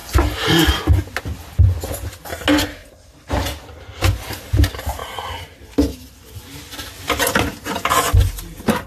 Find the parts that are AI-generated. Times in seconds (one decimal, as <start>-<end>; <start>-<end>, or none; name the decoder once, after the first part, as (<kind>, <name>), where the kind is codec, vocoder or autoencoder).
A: 0.0-0.8 (vocoder, BigVGAN v2); 2.8-3.8